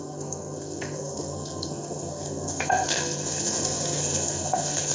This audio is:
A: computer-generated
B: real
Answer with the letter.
A